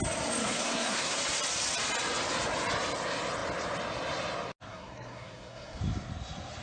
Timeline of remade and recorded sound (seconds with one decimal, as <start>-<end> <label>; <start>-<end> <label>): 0.0-0.4 recorded; 0.4-1.2 remade; 1.2-4.7 recorded; 4.7-5.8 remade; 5.8-6.6 recorded